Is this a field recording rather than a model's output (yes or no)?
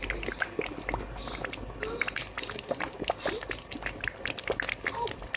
yes